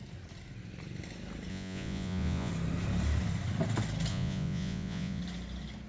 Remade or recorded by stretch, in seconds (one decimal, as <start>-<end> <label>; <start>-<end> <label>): 0.0-1.5 recorded; 1.5-2.5 remade; 2.5-4.1 recorded; 4.1-5.2 remade; 5.2-5.9 recorded